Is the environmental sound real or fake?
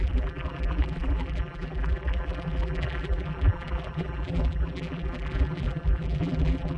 fake